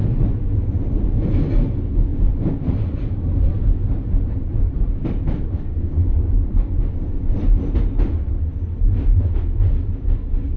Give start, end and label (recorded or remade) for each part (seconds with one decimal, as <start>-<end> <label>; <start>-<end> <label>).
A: 0.0-1.3 remade; 1.3-2.1 recorded; 2.1-7.4 remade; 7.4-10.6 recorded